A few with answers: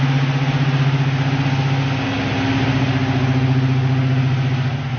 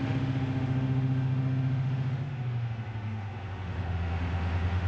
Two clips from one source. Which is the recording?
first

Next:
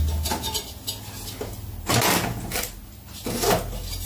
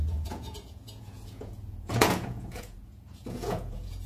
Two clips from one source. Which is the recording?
first